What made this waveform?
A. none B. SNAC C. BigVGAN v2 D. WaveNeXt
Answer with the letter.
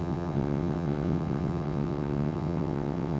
D